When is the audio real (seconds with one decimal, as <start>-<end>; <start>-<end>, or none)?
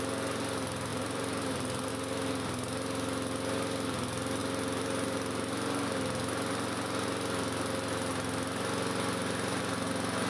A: 0.0-0.9; 1.9-10.3